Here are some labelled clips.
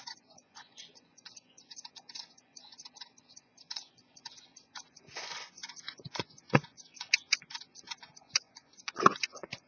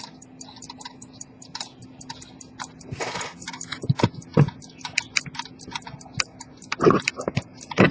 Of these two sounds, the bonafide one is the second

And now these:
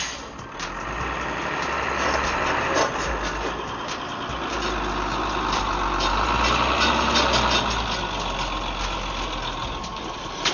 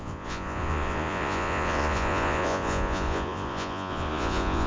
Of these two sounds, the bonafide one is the first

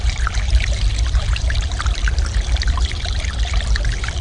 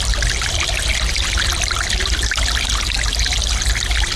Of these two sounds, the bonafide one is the second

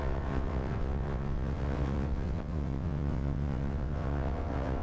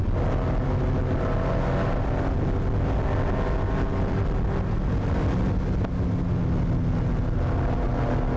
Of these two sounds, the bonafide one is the second